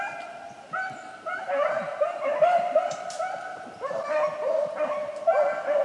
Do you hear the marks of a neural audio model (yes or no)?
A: no